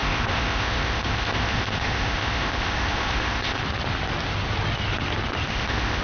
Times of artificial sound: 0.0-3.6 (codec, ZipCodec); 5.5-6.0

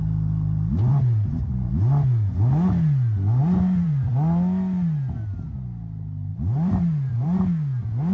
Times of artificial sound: 0.9-1.7 (vocoder, BigVGAN v2); 3.4-4.1; 6.3-7.4

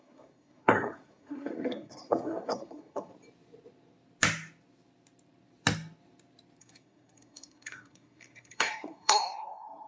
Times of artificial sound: 0.0-3.1 (codec, SNAC); 6.6-9.9

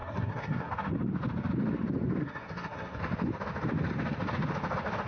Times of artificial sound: 0.0-0.7 (codec, SNAC); 2.2-3.0

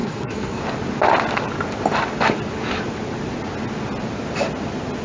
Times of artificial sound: 0.0-0.6 (codec, SNAC)